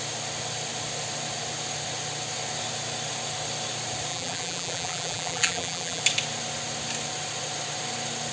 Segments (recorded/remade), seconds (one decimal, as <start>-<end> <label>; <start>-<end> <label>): 0.0-4.1 recorded; 4.1-6.0 remade; 6.0-8.3 recorded